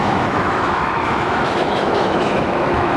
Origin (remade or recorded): remade